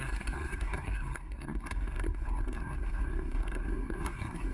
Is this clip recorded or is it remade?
remade